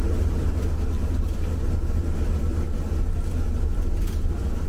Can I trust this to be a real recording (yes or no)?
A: yes